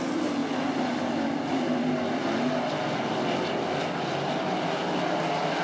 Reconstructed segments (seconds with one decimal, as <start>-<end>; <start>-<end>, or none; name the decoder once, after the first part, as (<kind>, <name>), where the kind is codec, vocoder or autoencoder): none